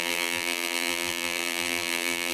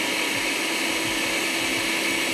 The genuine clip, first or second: second